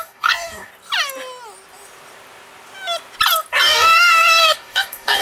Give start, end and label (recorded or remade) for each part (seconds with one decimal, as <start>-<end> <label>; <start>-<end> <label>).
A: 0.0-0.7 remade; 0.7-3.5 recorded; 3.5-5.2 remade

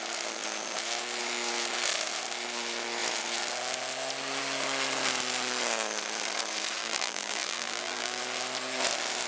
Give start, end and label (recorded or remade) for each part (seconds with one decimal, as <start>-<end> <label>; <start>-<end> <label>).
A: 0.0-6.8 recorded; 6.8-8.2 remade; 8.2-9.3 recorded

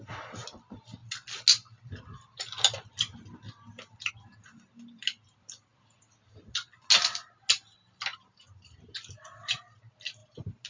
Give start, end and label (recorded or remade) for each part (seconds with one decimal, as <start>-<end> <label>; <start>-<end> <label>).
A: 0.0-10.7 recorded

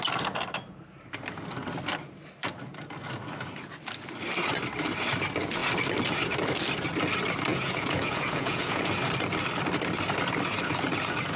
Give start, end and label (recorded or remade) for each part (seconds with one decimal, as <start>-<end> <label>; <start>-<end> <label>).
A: 0.0-7.5 recorded; 7.5-8.9 remade; 8.9-11.4 recorded

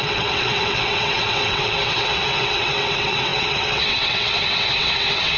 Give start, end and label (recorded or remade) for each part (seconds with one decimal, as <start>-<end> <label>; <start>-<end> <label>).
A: 0.0-5.4 remade